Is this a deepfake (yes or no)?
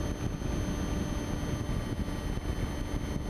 no